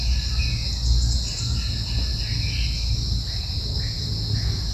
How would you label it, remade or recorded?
recorded